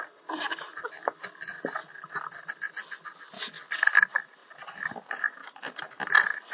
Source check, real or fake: real